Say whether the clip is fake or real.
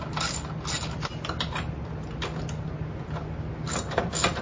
real